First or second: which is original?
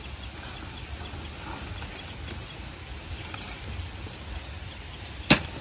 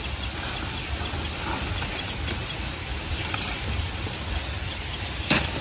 first